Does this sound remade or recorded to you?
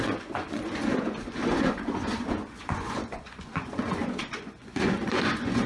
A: remade